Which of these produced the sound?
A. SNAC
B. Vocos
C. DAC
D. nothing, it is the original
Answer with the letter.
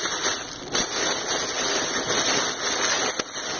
D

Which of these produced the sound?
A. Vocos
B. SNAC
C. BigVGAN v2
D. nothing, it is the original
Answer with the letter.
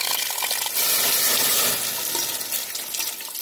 D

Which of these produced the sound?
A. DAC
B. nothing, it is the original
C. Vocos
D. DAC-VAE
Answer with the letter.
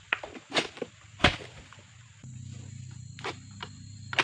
B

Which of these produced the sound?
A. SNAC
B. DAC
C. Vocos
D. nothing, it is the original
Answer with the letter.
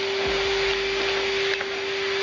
D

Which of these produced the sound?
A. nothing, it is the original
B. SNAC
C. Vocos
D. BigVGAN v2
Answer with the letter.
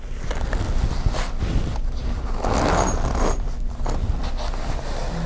A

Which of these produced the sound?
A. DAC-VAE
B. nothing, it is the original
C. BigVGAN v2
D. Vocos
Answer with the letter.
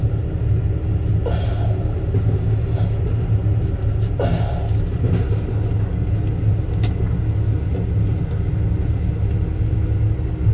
B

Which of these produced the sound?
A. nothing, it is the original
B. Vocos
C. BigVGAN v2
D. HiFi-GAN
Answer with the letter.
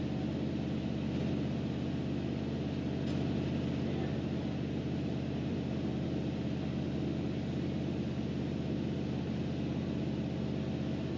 A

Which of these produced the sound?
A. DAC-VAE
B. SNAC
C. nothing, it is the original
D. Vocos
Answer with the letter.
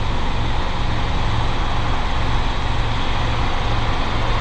C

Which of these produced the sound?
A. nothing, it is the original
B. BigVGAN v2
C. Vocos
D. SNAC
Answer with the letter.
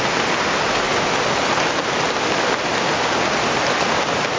A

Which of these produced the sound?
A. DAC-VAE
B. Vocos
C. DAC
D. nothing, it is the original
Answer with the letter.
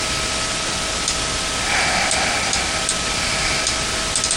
D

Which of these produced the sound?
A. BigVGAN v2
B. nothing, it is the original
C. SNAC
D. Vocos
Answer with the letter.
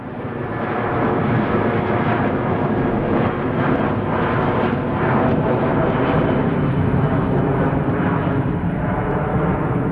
B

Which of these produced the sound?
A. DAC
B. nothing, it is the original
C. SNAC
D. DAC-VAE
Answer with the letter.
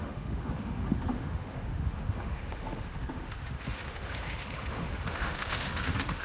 D